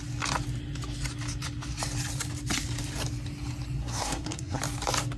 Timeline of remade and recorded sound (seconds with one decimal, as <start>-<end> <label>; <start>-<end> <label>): 0.0-3.8 recorded; 3.8-4.6 remade; 4.6-5.2 recorded